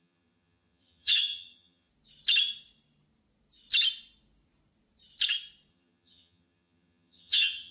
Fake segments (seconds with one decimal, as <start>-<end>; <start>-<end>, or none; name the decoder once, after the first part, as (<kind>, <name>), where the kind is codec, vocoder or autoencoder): 0.0-1.9 (vocoder, HiFi-GAN); 5.7-7.7